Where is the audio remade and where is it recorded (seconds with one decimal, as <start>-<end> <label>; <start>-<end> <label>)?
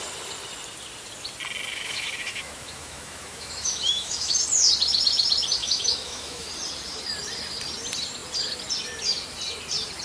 0.0-1.7 recorded; 1.7-4.4 remade; 4.4-5.6 recorded; 5.6-6.5 remade; 6.5-10.0 recorded